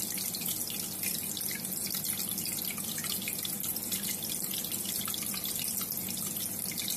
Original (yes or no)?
yes